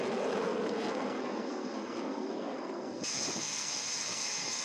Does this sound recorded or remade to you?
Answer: remade